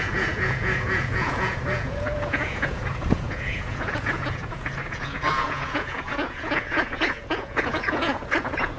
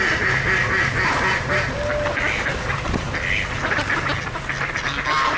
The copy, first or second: first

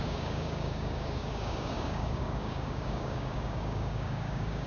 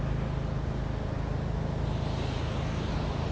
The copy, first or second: first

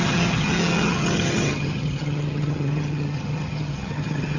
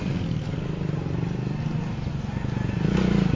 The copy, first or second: first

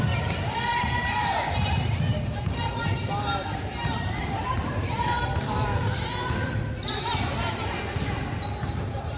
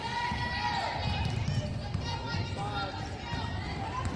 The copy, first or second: first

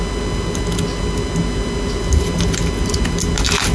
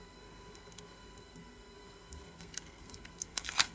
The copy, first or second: second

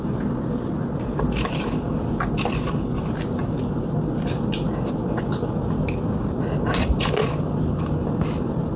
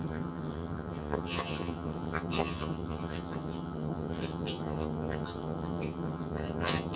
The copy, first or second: second